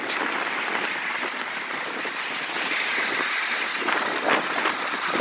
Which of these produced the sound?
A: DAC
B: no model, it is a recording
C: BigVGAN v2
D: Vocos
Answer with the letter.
B